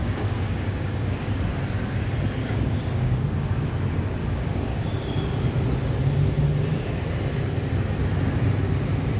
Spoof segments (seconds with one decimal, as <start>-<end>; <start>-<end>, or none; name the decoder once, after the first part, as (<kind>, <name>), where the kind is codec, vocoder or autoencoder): 0.0-1.4 (codec, DAC); 2.4-3.7; 4.2-5.4